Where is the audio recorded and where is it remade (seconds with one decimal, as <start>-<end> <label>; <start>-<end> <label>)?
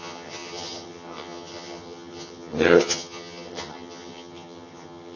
0.0-5.2 remade